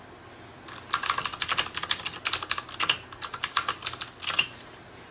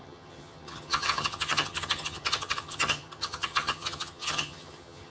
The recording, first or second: first